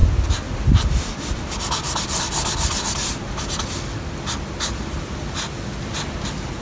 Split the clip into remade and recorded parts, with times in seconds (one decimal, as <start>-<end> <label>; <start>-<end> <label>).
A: 0.0-6.6 recorded